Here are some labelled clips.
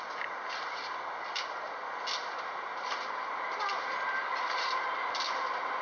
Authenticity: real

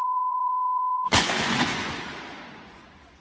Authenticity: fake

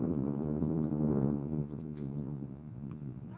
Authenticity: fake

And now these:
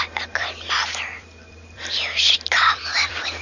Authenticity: fake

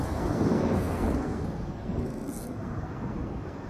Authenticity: fake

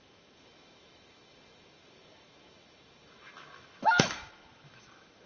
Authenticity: fake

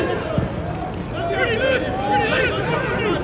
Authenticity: real